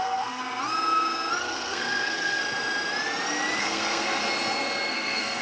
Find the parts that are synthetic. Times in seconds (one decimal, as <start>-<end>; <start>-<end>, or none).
0.0-0.4; 1.4-2.4; 3.6-4.2; 4.9-5.4